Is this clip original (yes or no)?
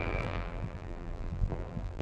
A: no